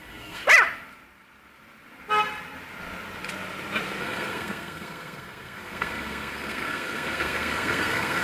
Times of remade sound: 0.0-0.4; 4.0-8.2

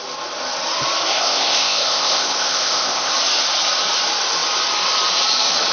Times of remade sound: 1.1-3.1

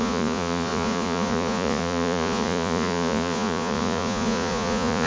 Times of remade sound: 0.0-5.1

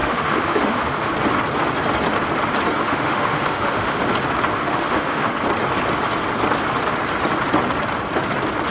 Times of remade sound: 0.0-1.1; 2.8-4.0; 4.6-5.3

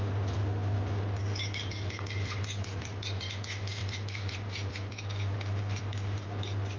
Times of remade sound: none

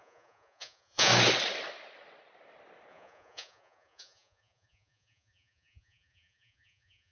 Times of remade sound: 0.0-1.1; 2.9-7.1